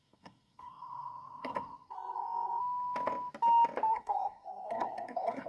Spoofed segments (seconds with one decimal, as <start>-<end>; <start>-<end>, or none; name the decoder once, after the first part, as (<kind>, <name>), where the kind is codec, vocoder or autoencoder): 0.0-2.6 (codec, SNAC); 3.9-5.5